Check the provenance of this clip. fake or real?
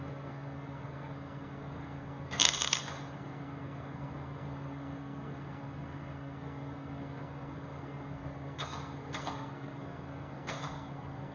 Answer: fake